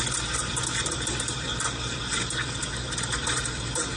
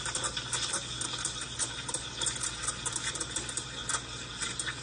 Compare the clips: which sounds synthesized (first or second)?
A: first